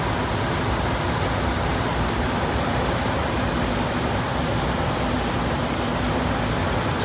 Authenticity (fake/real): real